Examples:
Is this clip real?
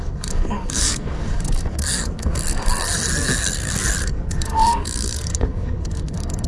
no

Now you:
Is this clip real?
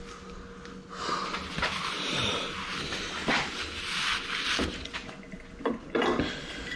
yes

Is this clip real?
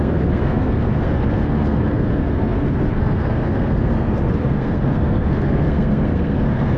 no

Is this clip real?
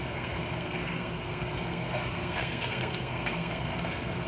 no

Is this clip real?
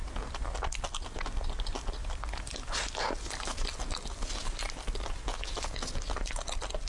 yes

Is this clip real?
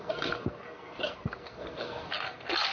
no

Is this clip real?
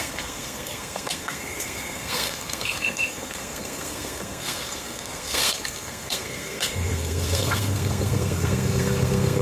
no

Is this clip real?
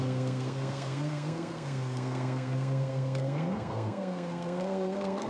no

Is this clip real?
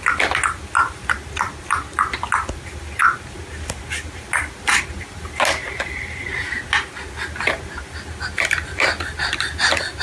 yes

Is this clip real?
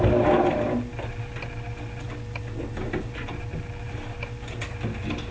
yes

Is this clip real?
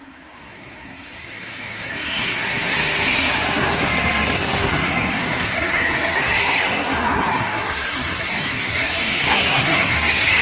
no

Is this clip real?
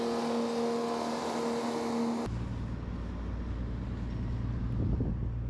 yes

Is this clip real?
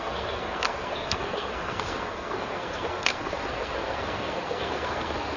no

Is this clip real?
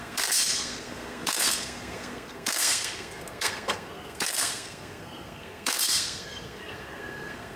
no